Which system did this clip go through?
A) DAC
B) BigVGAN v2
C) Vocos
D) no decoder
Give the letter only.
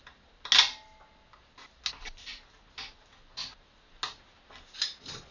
D